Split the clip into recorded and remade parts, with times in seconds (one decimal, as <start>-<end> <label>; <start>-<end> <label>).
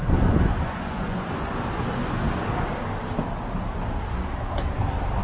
0.0-2.0 remade; 2.0-5.2 recorded